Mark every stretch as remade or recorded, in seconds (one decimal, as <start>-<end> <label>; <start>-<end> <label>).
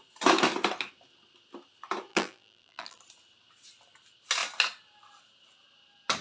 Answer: 0.0-2.1 recorded; 2.1-3.0 remade; 3.0-6.2 recorded